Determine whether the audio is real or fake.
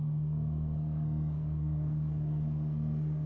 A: fake